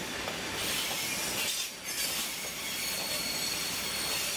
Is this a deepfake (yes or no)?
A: no